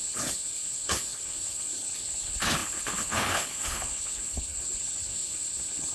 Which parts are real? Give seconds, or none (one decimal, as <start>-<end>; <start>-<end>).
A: none